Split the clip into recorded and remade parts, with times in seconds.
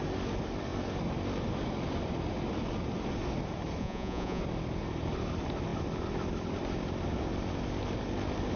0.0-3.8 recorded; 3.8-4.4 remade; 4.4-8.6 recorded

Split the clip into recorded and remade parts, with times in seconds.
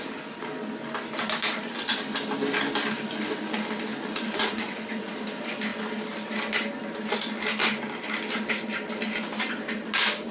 0.0-4.4 recorded; 4.4-5.1 remade; 5.1-10.3 recorded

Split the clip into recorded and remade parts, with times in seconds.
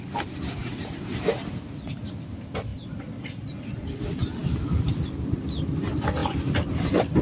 0.0-2.7 recorded; 2.7-4.0 remade; 4.0-4.4 recorded; 4.4-5.8 remade; 5.8-6.2 recorded; 6.2-7.2 remade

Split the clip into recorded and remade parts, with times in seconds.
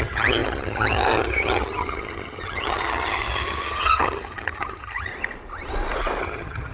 0.0-5.1 remade; 5.1-6.2 recorded; 6.2-6.7 remade